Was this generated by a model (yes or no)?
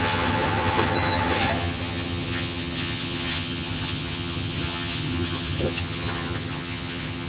yes